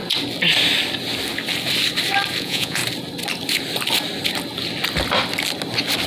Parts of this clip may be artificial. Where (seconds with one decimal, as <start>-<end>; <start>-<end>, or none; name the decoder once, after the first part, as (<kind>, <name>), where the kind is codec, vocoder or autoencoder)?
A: 2.4-2.8 (vocoder, Vocos)